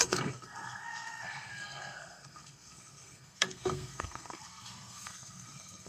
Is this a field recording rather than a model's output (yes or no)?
no